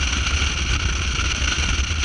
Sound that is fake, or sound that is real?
real